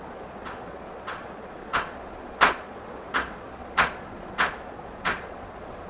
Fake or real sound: fake